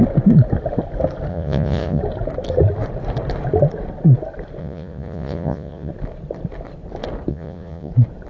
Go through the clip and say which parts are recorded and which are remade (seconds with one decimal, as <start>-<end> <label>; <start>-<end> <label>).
0.0-1.3 recorded; 1.3-2.0 remade; 2.0-4.6 recorded; 4.6-5.9 remade; 5.9-7.3 recorded; 7.3-7.9 remade; 7.9-8.3 recorded